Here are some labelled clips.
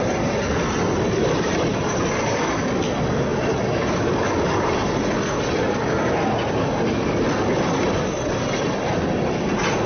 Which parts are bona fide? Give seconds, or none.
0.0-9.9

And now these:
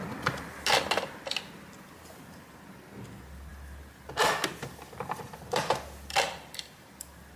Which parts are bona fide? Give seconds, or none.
0.0-7.4

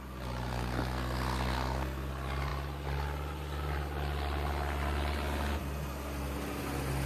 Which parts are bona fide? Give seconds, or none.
0.0-0.5; 2.1-7.1

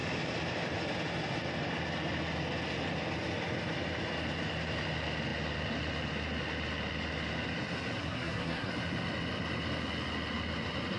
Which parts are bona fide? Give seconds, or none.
0.0-8.0; 8.7-11.0

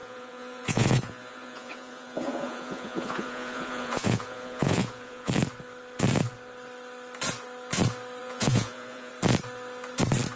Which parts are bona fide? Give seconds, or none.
5.3-8.2; 9.1-10.4